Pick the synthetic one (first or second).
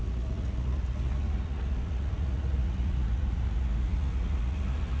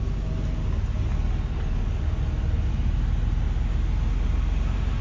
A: first